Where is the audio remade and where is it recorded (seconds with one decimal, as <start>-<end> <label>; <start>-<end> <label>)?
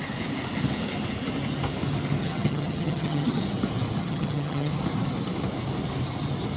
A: 0.0-2.2 recorded; 2.2-3.4 remade; 3.4-4.0 recorded; 4.0-4.7 remade; 4.7-6.6 recorded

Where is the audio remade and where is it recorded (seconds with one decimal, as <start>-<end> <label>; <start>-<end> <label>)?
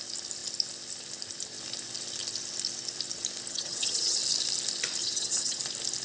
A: 0.0-3.5 recorded; 3.5-4.2 remade; 4.2-5.0 recorded; 5.0-5.6 remade; 5.6-6.0 recorded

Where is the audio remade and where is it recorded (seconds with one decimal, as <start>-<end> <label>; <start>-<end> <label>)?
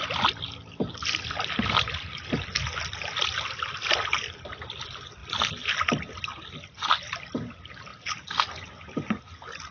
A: 0.0-9.7 recorded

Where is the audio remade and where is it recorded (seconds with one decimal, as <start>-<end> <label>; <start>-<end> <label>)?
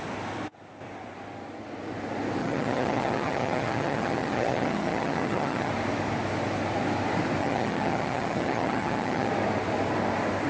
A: 0.0-2.4 recorded; 2.4-5.7 remade; 5.7-7.4 recorded; 7.4-9.3 remade; 9.3-10.5 recorded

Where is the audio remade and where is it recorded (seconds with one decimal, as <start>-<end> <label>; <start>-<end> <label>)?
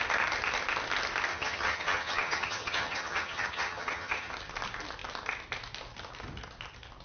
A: 0.0-1.3 recorded; 1.3-4.3 remade; 4.3-7.0 recorded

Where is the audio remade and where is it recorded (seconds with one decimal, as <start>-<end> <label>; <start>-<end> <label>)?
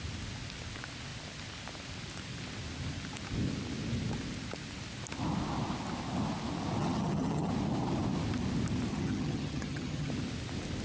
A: 0.0-6.8 recorded; 6.8-7.5 remade; 7.5-8.9 recorded; 8.9-10.1 remade; 10.1-10.8 recorded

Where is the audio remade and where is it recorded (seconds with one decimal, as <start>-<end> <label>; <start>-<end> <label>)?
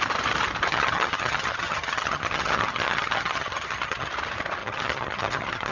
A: 0.0-0.7 recorded; 0.7-4.1 remade; 4.1-4.6 recorded; 4.6-5.7 remade